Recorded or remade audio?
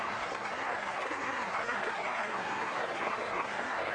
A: remade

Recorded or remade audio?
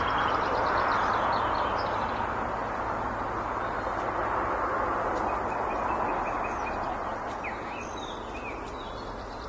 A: recorded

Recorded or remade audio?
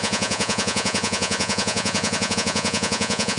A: remade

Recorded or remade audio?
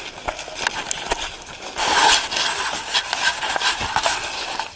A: recorded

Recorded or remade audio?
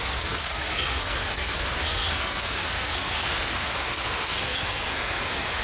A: remade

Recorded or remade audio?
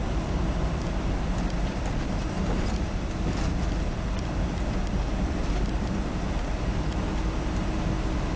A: remade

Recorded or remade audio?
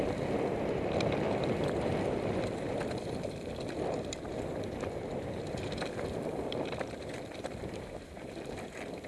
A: remade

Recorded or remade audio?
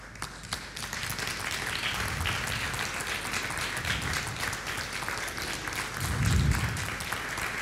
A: recorded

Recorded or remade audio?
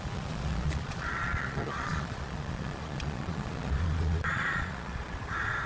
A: remade